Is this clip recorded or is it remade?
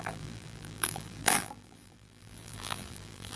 remade